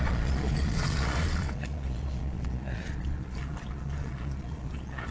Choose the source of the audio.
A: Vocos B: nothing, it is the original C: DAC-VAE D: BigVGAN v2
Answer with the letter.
A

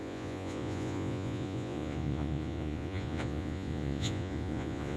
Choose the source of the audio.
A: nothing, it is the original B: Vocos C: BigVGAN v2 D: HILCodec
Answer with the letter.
B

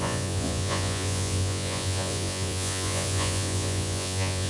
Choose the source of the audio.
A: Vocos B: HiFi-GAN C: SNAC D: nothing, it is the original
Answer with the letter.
A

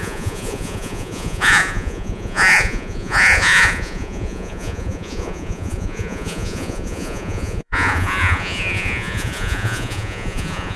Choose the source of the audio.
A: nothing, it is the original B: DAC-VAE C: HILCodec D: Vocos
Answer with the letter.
D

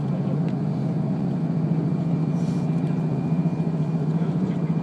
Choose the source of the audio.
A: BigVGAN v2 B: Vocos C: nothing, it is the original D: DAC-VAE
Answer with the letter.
B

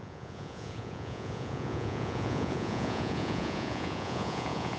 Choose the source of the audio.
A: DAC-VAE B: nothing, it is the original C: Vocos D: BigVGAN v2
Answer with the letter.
C